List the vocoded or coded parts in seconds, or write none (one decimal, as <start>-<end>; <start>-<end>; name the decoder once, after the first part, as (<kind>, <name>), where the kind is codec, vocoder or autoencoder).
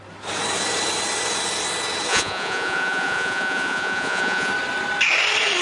2.1-4.5 (vocoder, Vocos)